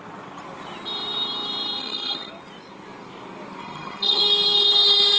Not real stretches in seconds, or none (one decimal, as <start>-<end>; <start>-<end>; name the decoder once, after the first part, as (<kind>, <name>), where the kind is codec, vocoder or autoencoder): 1.8-2.3 (vocoder, HiFi-GAN); 3.6-4.2